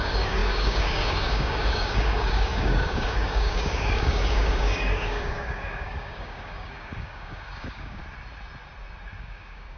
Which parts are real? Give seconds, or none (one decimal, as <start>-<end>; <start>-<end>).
8.0-9.2